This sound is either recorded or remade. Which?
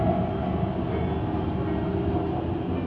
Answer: recorded